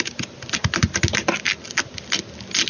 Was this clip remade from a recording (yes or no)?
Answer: no